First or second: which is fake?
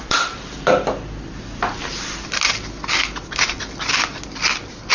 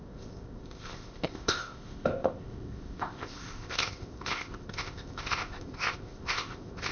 second